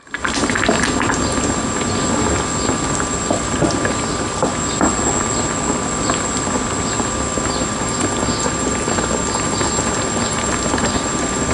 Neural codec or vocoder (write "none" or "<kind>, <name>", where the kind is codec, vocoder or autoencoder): none